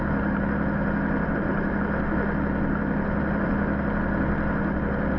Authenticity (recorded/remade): recorded